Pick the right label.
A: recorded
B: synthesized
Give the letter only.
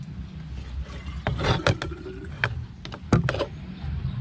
A